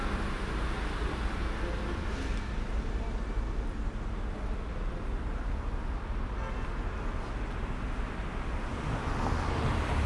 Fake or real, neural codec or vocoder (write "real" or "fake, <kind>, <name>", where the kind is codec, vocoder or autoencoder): real